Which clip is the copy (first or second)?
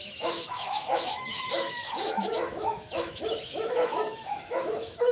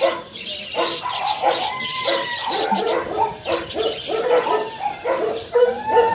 first